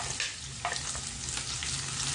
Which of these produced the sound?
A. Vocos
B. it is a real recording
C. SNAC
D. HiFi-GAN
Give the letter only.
B